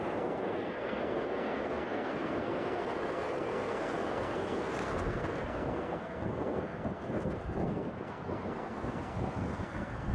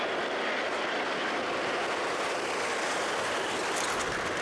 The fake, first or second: first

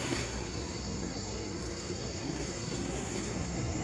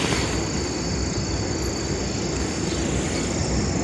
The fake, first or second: first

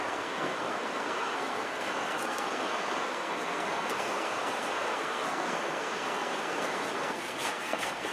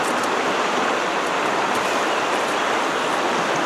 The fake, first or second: first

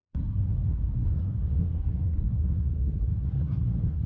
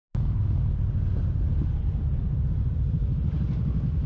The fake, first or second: first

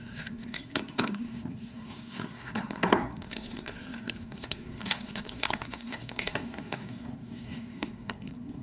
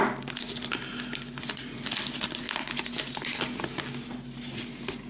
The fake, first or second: first